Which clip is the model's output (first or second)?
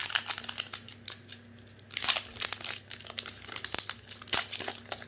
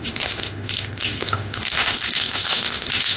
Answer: second